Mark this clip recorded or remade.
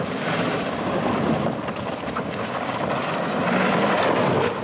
recorded